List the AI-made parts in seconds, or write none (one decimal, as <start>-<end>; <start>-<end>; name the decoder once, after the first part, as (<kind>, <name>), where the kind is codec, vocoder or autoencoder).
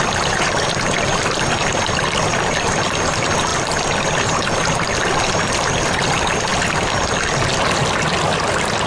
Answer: none